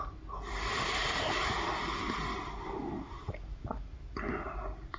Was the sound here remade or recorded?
recorded